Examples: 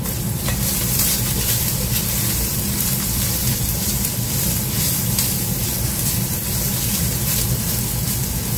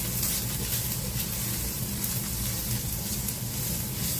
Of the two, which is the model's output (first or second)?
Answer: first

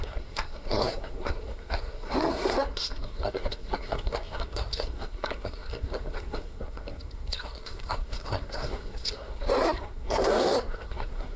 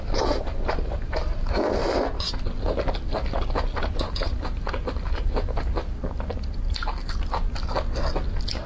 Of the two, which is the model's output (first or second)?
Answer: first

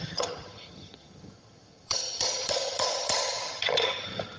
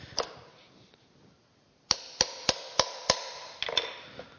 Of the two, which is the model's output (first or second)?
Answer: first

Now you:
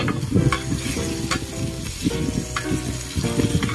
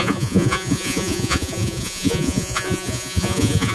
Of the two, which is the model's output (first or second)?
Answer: second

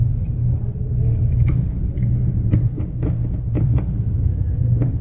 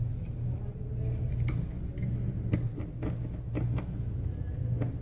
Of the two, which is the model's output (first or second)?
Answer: first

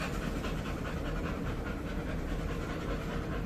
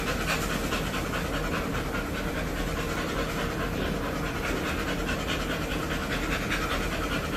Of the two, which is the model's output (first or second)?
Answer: first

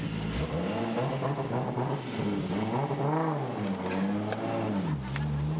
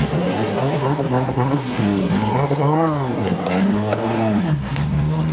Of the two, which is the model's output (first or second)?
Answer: second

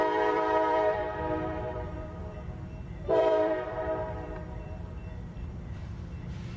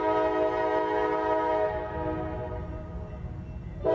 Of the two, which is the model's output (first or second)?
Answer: first